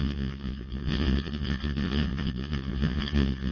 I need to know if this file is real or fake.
fake